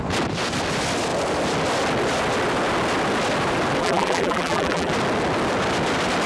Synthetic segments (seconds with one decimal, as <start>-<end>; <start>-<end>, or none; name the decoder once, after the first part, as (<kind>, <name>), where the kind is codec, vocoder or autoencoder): 3.8-4.9 (vocoder, BigVGAN v2)